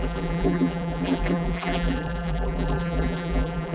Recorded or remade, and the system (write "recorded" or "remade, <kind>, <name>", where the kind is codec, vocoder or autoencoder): remade, vocoder, BigVGAN v2